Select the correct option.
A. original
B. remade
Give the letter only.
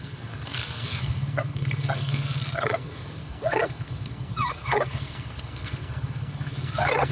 B